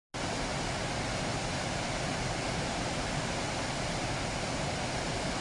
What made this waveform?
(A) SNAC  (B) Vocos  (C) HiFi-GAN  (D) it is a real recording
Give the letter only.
D